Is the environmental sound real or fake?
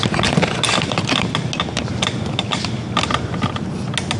real